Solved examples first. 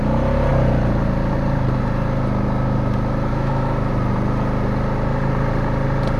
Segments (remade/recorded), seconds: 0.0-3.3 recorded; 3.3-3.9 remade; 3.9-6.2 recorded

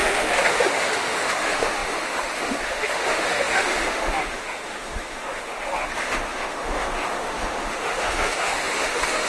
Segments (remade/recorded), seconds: 0.0-9.3 remade

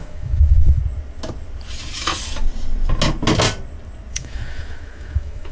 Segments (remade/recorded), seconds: 0.0-0.8 remade; 0.8-4.1 recorded; 4.1-5.5 remade

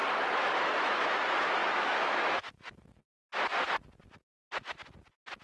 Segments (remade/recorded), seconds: 0.0-0.5 recorded; 0.5-3.0 remade; 3.0-5.4 recorded

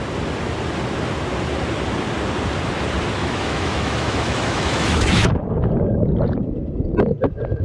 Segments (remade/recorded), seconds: 0.0-3.2 recorded; 3.2-5.3 remade; 5.3-7.6 recorded

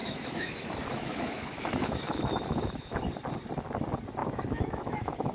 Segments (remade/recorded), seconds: 0.0-3.0 remade; 3.0-4.2 recorded; 4.2-5.3 remade

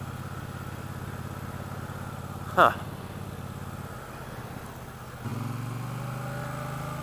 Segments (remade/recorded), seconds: 0.0-7.0 recorded